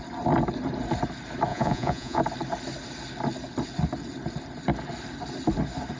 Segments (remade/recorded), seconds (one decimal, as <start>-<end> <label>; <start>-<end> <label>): 0.0-1.5 recorded; 1.5-2.2 remade; 2.2-6.0 recorded